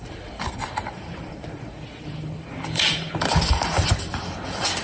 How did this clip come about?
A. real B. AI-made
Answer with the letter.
B